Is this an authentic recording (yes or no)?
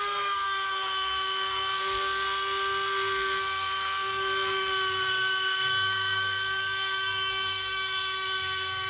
no